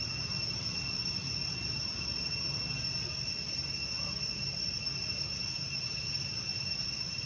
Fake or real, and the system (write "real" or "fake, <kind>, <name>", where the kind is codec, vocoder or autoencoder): real